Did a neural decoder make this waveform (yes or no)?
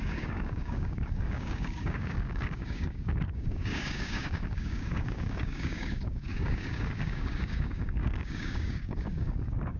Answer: yes